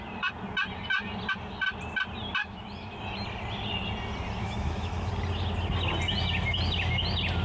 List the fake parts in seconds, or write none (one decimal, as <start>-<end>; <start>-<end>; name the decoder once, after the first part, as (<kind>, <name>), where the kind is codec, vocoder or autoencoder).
2.4-3.0 (autoencoder, DAC-VAE); 4.4-5.1